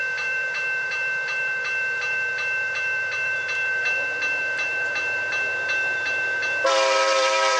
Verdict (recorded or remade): remade